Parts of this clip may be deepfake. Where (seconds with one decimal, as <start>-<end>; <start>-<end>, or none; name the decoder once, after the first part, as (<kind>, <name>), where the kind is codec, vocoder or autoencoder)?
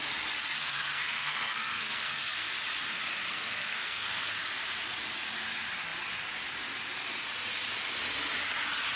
0.6-2.5 (codec, SNAC); 3.3-4.4